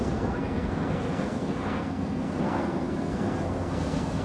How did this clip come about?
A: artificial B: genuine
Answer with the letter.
A